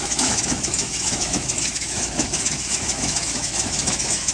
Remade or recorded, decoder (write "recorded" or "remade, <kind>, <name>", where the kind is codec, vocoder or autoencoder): remade, autoencoder, DAC-VAE